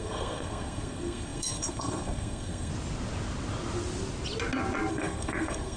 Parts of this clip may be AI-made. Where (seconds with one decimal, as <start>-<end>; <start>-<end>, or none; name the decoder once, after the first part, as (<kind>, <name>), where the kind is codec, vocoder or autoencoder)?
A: 0.0-2.7 (codec, SNAC); 4.9-5.8